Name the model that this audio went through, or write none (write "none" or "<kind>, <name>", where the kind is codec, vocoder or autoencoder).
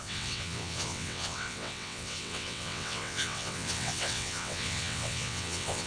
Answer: vocoder, WaveNeXt